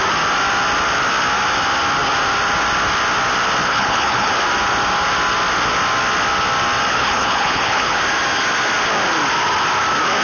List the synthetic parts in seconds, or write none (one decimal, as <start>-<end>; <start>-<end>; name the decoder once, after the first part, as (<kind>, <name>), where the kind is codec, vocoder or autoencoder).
3.6-4.3 (codec, HILCodec); 6.9-8.0